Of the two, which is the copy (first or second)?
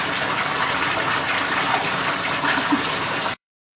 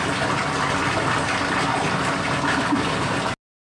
first